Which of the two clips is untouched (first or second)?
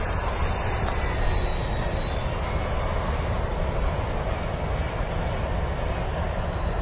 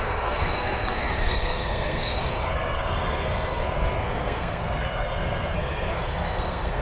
first